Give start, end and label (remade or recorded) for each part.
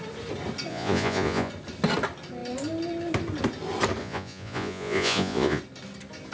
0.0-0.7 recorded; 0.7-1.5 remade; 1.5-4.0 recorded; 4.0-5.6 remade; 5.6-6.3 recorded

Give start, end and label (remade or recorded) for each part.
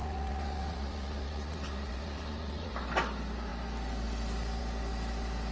0.0-2.7 remade; 2.7-5.5 recorded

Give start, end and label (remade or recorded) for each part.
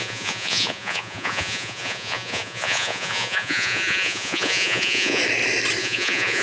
0.0-5.2 remade; 5.2-5.8 recorded; 5.8-6.4 remade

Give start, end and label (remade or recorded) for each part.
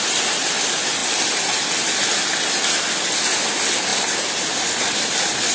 0.0-5.5 recorded